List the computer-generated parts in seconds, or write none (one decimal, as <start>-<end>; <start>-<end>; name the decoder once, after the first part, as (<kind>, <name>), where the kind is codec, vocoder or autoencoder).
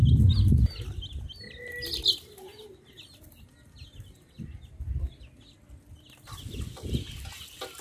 none